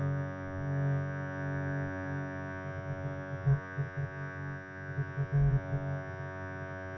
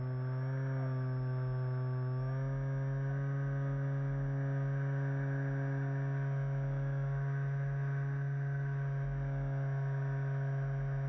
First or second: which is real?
second